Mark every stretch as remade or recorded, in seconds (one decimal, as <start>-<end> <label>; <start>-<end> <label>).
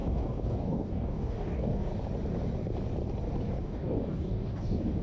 0.0-1.9 remade; 1.9-3.6 recorded; 3.6-5.0 remade